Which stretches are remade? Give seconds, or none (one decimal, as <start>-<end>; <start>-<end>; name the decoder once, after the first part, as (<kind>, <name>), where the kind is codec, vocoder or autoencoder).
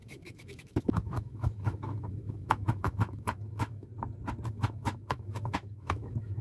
0.0-3.9 (autoencoder, DAC-VAE); 4.5-6.4